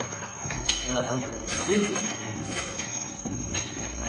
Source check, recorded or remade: remade